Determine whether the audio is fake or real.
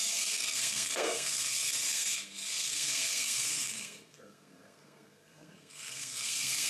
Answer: fake